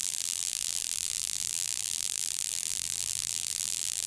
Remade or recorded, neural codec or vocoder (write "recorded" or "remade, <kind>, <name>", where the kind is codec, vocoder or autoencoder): remade, vocoder, BigVGAN v2